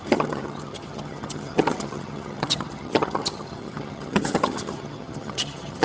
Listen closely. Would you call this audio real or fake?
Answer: fake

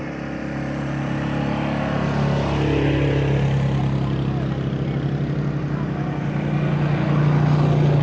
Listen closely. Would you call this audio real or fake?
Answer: real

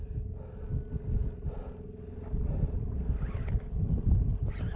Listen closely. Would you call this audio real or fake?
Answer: real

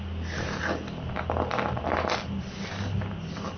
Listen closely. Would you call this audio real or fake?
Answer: real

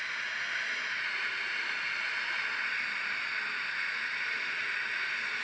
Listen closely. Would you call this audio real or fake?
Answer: real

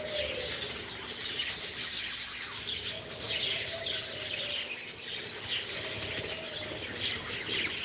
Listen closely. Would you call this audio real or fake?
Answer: real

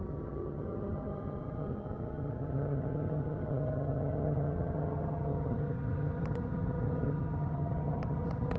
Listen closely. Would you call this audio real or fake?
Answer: fake